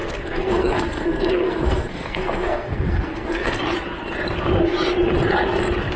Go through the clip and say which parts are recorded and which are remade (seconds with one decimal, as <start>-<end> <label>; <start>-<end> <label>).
0.0-3.6 remade; 3.6-6.0 recorded